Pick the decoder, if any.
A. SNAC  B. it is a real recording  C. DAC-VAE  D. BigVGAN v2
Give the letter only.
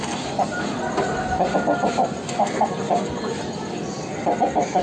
B